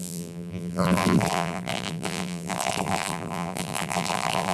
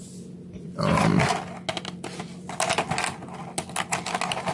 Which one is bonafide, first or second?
second